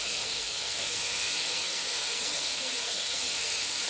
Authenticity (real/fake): fake